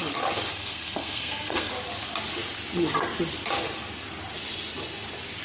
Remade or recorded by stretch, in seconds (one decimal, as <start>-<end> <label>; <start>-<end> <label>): 0.0-0.5 recorded; 0.5-1.7 remade; 1.7-5.4 recorded